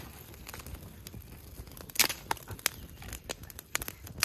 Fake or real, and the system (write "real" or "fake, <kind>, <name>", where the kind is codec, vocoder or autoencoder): real